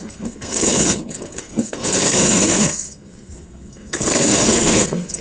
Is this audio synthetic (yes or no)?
yes